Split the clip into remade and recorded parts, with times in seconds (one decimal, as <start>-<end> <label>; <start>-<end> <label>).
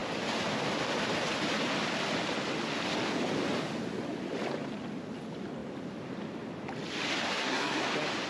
0.0-7.3 recorded; 7.3-7.8 remade; 7.8-8.3 recorded